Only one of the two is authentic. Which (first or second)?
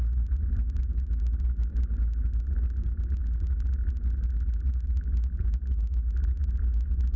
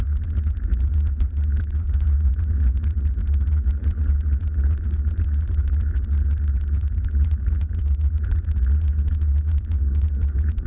first